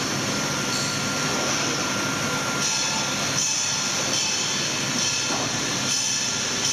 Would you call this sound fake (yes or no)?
no